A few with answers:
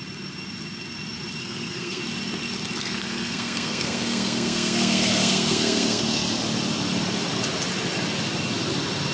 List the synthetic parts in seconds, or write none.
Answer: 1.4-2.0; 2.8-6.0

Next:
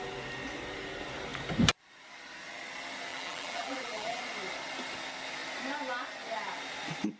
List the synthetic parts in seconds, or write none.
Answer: 3.1-4.2

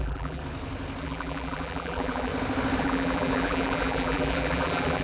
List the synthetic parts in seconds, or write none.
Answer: 0.0-0.4; 1.0-2.3; 2.8-5.0